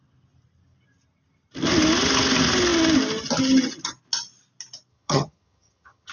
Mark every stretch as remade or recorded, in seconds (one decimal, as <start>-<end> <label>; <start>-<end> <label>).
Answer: 0.0-4.9 recorded; 4.9-6.1 remade